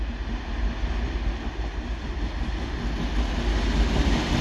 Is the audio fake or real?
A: real